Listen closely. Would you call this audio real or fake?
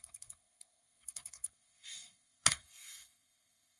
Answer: fake